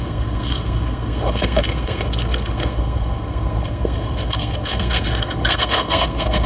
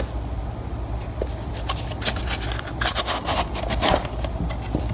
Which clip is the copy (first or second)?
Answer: first